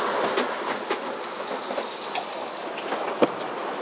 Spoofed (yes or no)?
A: no